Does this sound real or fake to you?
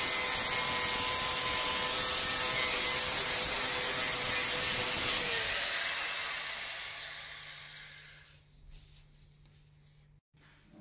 real